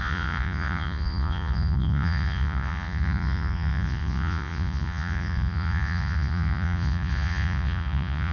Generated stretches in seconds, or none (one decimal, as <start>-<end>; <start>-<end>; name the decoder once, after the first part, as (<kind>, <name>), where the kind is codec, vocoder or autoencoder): 0.0-8.3 (vocoder, Vocos)